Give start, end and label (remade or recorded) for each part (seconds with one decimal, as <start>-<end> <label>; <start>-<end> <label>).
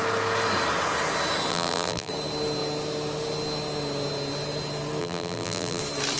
0.0-1.5 recorded; 1.5-2.1 remade; 2.1-5.0 recorded; 5.0-5.8 remade; 5.8-6.2 recorded